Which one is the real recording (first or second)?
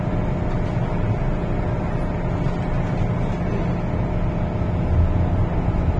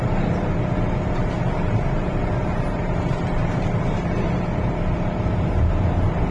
first